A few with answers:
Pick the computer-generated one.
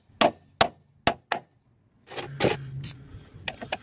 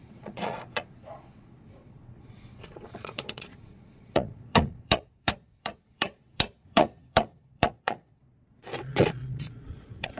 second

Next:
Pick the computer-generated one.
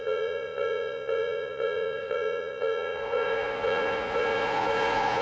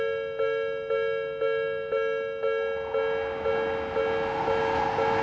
first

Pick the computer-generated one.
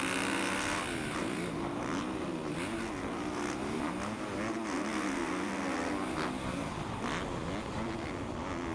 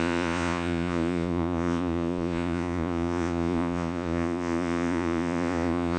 second